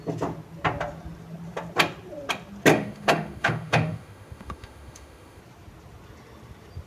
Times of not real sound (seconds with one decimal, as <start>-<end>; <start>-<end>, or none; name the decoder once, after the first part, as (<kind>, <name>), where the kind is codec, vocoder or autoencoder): 2.7-5.4 (autoencoder, DAC-VAE)